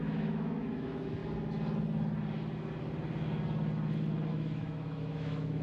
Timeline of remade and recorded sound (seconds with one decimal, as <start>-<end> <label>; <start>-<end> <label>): 0.0-1.2 remade; 1.2-4.3 recorded; 4.3-5.6 remade